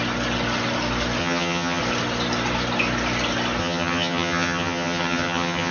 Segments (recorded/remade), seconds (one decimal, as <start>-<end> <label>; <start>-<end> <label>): 0.0-1.2 recorded; 1.2-1.8 remade; 1.8-3.6 recorded; 3.6-5.7 remade